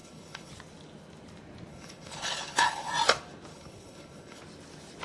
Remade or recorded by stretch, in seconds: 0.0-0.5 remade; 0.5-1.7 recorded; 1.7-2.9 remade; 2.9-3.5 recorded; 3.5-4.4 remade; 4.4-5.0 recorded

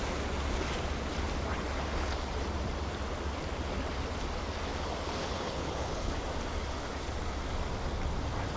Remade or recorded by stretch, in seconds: 0.0-5.2 recorded; 5.2-6.1 remade; 6.1-8.6 recorded

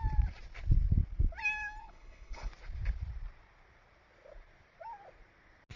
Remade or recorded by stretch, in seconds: 0.0-1.8 recorded; 1.8-2.5 remade; 2.5-5.8 recorded

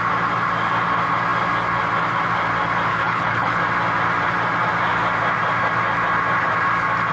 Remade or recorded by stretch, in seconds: 0.0-2.9 recorded; 2.9-3.6 remade; 3.6-7.1 recorded